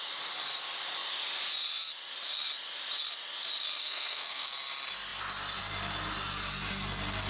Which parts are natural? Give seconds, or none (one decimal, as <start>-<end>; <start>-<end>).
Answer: 0.0-3.8; 4.5-7.3